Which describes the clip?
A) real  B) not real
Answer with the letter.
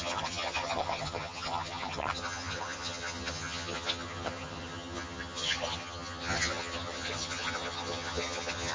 B